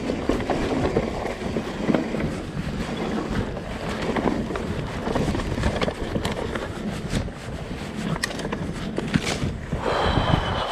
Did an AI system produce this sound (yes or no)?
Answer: no